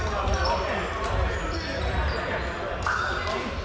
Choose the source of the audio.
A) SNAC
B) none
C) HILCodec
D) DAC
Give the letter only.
B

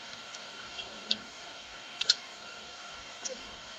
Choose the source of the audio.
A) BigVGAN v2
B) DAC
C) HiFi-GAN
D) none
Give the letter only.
B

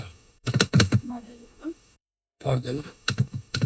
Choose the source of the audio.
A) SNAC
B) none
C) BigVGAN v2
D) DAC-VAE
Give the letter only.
D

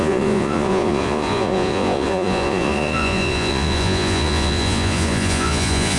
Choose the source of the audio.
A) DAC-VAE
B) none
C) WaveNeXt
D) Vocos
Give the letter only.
D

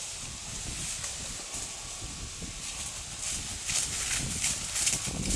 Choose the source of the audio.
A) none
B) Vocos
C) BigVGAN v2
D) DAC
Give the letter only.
A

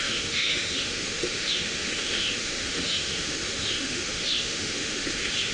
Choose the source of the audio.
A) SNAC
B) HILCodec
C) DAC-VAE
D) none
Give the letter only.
C